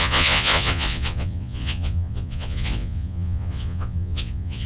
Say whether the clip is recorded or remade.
remade